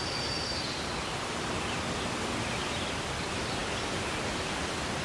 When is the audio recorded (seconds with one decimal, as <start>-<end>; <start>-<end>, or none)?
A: 0.0-5.0